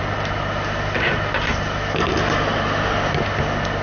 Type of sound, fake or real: real